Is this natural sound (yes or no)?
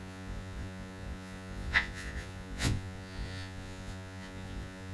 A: no